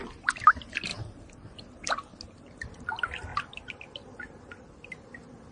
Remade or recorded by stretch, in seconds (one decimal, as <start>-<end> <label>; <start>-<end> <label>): 0.0-5.5 recorded